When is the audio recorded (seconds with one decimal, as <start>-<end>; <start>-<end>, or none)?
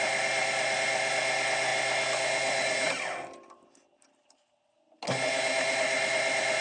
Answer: 0.0-6.6